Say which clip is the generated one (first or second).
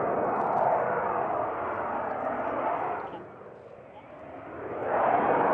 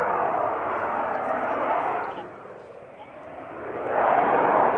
second